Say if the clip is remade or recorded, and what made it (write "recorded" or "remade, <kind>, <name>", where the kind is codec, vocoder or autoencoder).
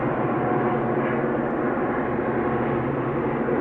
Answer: recorded